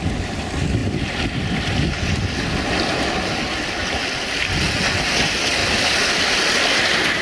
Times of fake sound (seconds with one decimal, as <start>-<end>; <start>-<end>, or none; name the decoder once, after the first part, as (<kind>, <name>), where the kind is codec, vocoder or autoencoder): none